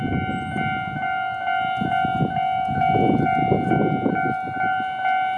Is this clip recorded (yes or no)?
yes